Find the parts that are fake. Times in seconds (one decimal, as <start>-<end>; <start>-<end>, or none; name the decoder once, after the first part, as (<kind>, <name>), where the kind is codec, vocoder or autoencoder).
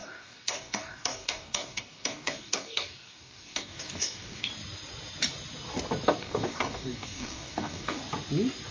0.0-4.5 (codec, DAC); 6.2-8.0